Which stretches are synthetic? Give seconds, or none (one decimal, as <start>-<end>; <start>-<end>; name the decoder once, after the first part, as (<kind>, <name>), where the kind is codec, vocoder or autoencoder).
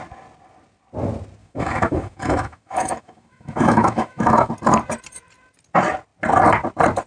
1.4-4.5 (autoencoder, DAC-VAE)